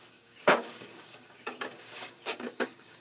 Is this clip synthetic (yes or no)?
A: yes